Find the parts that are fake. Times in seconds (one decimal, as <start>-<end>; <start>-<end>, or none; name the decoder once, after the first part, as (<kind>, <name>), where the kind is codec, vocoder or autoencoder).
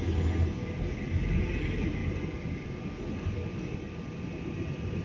none